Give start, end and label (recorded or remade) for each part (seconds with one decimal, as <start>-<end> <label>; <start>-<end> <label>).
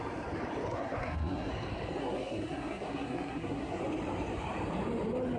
0.0-0.7 recorded; 0.7-1.5 remade; 1.5-2.0 recorded; 2.0-3.8 remade; 3.8-5.4 recorded